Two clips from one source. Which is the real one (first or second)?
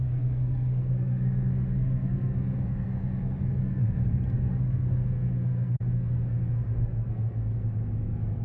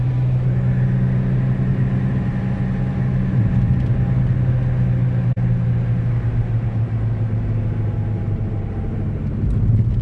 second